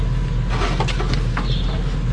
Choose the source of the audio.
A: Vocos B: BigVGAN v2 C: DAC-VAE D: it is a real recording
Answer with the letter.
D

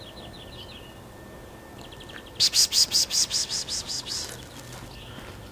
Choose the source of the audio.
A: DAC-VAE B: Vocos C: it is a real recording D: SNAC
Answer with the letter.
C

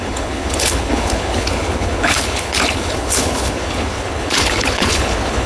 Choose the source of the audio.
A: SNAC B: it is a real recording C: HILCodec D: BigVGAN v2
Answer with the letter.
C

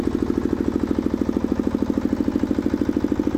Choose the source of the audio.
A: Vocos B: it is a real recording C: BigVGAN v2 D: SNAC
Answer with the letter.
B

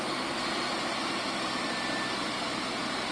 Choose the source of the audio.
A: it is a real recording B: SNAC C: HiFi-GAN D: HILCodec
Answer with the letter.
A